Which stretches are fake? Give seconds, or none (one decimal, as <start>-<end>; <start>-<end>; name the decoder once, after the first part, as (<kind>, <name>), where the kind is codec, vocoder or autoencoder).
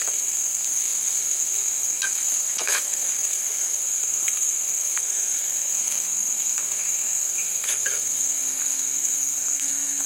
0.0-10.1 (codec, SNAC)